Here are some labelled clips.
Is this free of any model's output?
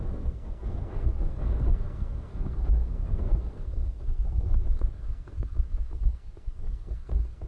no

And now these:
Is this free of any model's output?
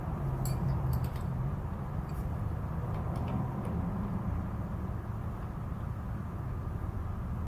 yes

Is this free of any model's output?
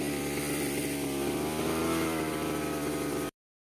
no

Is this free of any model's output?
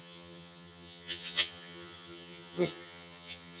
no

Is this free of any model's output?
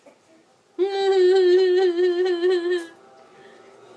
yes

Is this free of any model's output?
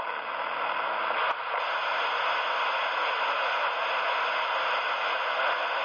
yes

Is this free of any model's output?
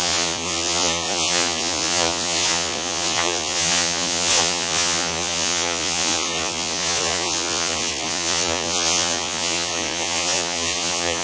no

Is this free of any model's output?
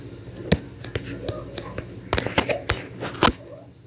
yes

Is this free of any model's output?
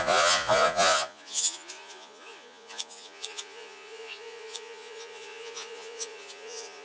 no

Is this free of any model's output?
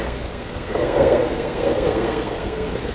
no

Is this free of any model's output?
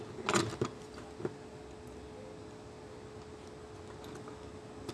yes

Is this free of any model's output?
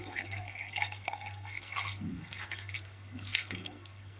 no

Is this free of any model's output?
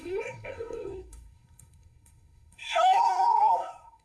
no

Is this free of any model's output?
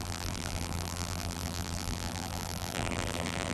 no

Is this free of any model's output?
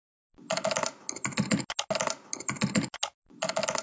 yes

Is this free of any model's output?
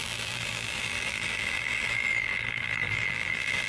no